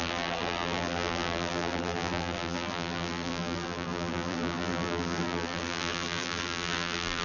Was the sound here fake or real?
fake